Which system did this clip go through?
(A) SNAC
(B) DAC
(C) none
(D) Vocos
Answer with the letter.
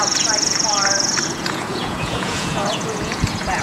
D